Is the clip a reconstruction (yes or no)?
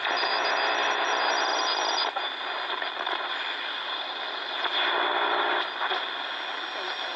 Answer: no